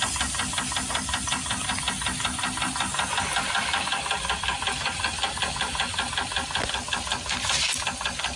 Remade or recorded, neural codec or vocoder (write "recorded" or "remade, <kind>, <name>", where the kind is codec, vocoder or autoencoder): recorded